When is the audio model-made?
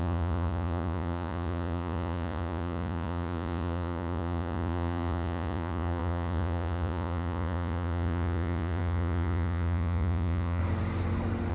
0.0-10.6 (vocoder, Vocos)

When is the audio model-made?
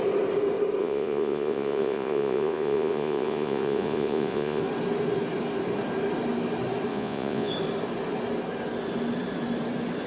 0.8-4.6 (vocoder, Vocos); 6.9-7.5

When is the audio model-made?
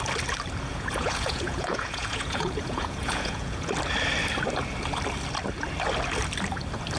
0.7-3.7 (vocoder, Vocos)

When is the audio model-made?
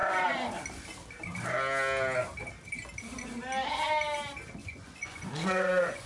4.6-6.1 (vocoder, Vocos)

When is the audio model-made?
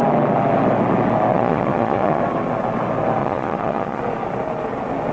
1.3-2.2 (vocoder, Vocos); 3.2-4.0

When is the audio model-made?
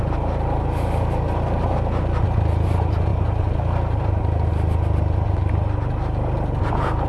none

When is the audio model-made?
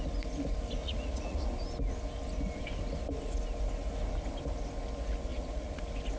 0.8-1.5 (vocoder, Vocos); 5.3-5.8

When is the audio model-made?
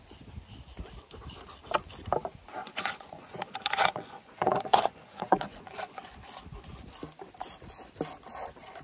2.6-6.1 (vocoder, Vocos)